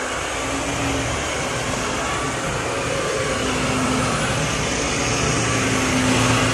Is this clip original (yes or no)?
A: yes